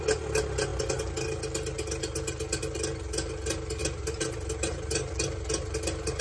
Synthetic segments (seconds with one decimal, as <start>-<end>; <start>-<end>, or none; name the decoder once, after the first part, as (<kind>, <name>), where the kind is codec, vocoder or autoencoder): 3.8-5.1 (vocoder, BigVGAN v2)